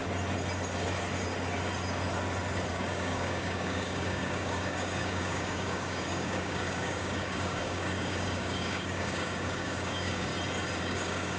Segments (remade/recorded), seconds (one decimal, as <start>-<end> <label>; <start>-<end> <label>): 0.0-2.7 recorded; 2.7-10.3 remade; 10.3-10.8 recorded; 10.8-11.4 remade